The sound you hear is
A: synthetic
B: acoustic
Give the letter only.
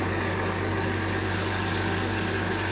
A